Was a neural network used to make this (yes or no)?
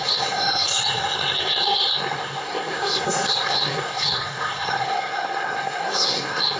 yes